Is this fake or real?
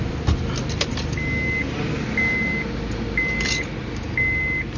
real